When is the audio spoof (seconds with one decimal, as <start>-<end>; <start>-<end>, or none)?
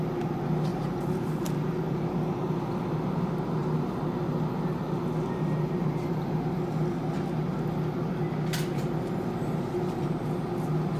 0.7-1.4